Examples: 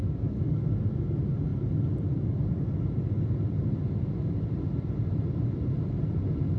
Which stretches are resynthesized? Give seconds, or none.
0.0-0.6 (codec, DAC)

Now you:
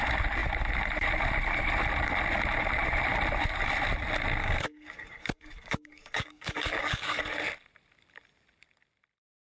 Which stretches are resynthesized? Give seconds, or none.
4.4-7.2 (codec, DAC)

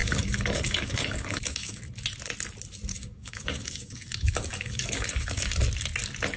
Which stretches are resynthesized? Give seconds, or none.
0.0-1.8 (codec, DAC); 2.9-5.5